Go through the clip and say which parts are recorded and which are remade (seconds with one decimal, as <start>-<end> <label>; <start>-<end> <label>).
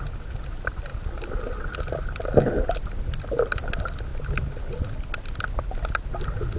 0.0-6.6 recorded